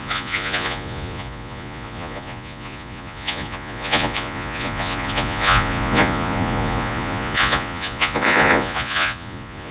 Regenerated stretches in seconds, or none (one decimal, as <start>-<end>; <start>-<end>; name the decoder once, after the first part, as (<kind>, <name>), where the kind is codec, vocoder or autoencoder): 0.0-9.7 (vocoder, Vocos)